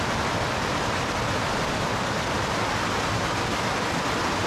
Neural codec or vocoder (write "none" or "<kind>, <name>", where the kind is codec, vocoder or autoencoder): none